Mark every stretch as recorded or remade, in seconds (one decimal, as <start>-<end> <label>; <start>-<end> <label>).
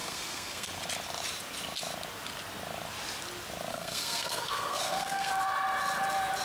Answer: 0.0-0.7 remade; 0.7-3.7 recorded; 3.7-5.3 remade; 5.3-6.4 recorded